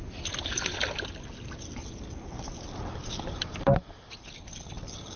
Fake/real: real